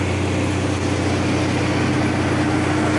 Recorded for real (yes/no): yes